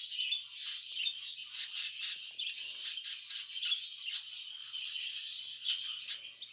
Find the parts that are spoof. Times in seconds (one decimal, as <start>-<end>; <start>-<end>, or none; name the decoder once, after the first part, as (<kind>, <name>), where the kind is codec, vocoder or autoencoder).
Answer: 4.6-6.1 (vocoder, Vocos)